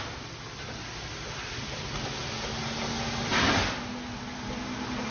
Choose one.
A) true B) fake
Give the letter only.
A